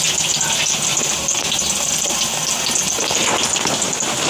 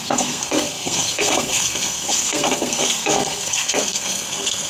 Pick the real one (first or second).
first